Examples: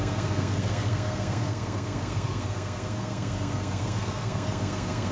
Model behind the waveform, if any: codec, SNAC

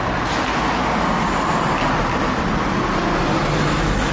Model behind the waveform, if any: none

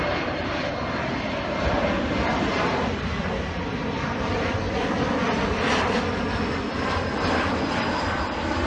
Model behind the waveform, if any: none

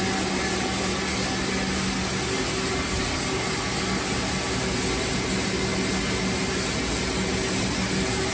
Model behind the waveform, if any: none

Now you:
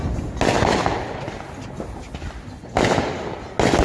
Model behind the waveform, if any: none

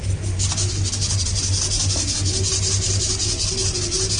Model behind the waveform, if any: none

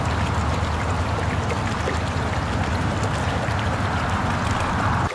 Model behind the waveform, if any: none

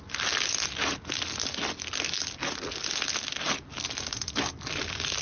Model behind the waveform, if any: none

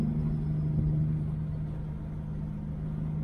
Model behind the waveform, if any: none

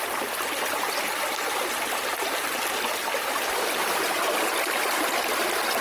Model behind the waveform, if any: none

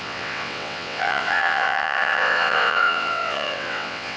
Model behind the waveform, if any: vocoder, WaveNeXt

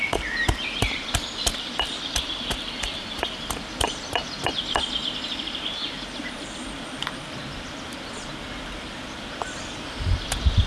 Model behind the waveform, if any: vocoder, BigVGAN v2